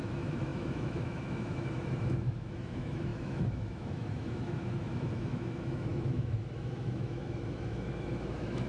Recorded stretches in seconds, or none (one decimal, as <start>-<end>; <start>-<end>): none